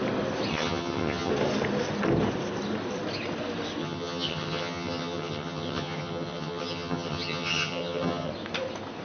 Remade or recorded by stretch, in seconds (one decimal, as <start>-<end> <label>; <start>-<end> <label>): 0.0-0.5 recorded; 0.5-1.3 remade; 1.3-3.8 recorded; 3.8-8.3 remade; 8.3-9.0 recorded